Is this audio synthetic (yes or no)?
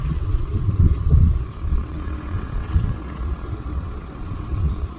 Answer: yes